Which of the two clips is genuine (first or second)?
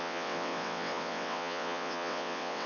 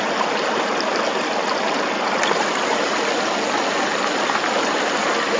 second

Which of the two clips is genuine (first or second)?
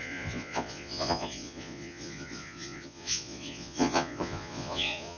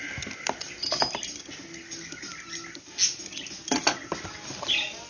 second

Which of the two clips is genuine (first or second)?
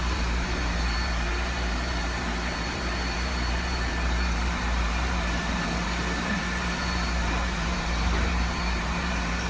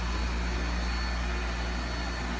second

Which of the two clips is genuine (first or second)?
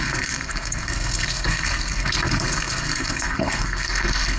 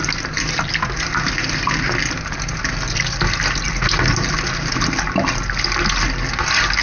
second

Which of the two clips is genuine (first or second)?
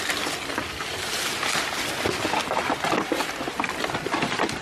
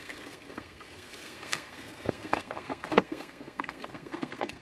first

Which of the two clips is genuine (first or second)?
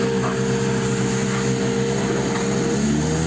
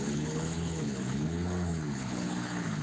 first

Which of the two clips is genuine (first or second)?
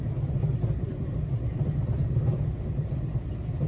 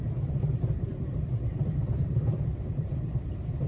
first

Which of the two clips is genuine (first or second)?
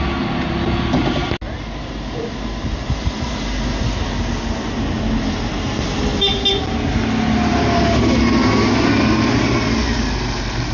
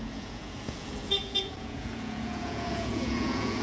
first